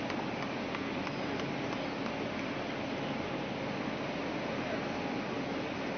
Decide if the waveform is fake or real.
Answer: real